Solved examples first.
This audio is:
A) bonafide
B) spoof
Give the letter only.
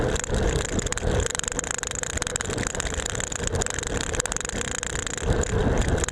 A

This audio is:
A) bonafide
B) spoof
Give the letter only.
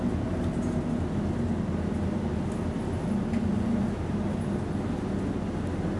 A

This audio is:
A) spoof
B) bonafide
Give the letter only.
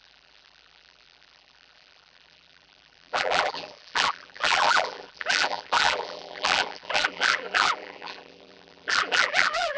A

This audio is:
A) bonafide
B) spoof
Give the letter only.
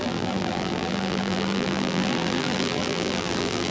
B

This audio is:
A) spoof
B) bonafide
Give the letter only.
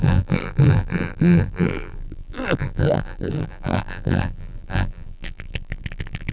A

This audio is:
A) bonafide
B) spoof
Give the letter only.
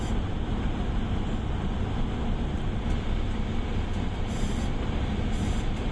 A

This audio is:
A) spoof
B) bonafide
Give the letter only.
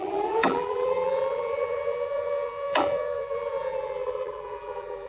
A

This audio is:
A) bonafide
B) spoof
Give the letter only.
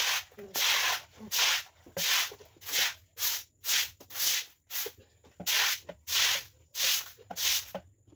A